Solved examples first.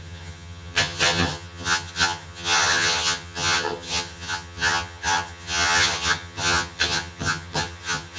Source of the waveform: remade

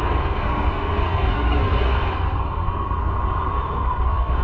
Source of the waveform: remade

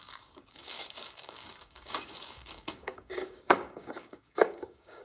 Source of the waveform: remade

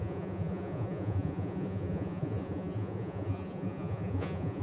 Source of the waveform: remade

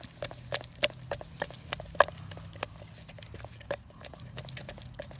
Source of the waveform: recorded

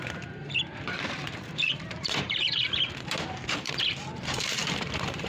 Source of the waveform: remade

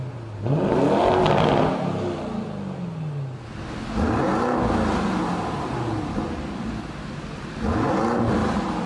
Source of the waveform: recorded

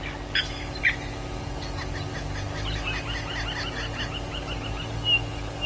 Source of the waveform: recorded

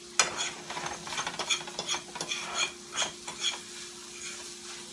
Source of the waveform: recorded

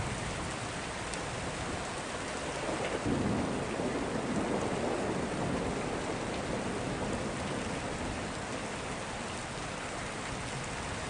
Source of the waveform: recorded